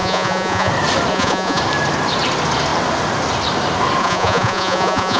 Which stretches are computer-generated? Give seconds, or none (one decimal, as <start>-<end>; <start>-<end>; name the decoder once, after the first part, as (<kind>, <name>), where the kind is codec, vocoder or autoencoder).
0.0-0.7 (vocoder, Vocos); 1.1-1.6; 4.0-5.2